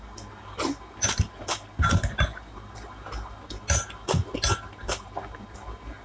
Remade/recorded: recorded